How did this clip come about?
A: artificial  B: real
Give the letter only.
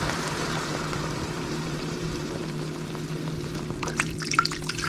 A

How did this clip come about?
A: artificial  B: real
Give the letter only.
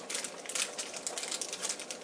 B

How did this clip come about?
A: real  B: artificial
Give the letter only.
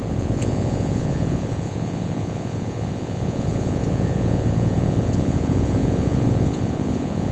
B